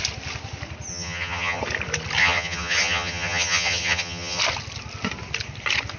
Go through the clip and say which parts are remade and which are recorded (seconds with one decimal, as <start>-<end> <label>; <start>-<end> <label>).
0.0-0.9 recorded; 0.9-1.6 remade; 1.6-2.2 recorded; 2.2-4.4 remade; 4.4-6.0 recorded

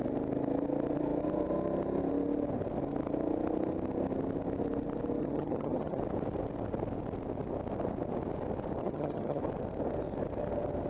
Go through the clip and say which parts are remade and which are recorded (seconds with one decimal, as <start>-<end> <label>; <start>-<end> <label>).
0.0-5.2 recorded; 5.2-6.0 remade; 6.0-8.8 recorded; 8.8-9.4 remade; 9.4-10.9 recorded

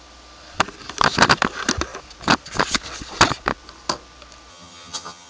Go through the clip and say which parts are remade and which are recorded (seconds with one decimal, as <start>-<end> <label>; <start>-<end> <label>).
0.0-4.5 recorded; 4.5-5.3 remade

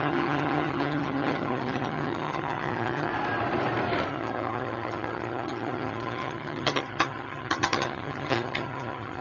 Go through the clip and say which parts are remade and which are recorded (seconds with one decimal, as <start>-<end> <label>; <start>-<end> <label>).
0.0-3.1 remade; 3.1-4.1 recorded; 4.1-9.2 remade